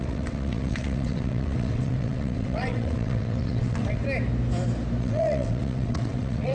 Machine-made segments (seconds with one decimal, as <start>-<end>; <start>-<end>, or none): 0.0-4.0; 5.0-6.5